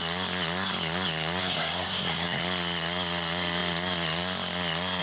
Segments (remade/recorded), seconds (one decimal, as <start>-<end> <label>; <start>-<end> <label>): 0.0-1.4 recorded; 1.4-2.4 remade; 2.4-5.0 recorded

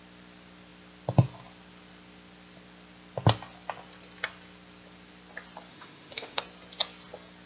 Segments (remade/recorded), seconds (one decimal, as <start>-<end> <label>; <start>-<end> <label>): 0.0-5.7 recorded; 5.7-6.4 remade; 6.4-7.5 recorded

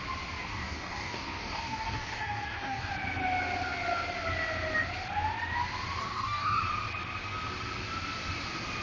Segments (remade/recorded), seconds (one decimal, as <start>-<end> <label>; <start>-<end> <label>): 0.0-0.4 recorded; 0.4-2.9 remade; 2.9-6.0 recorded; 6.0-6.6 remade; 6.6-8.8 recorded

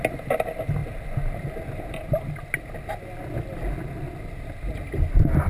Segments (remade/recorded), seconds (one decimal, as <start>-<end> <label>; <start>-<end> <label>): 0.0-5.5 recorded